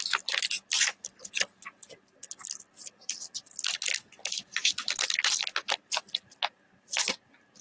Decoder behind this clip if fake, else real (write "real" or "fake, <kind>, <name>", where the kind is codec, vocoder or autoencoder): real